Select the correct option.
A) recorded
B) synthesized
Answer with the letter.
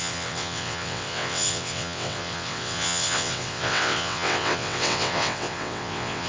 B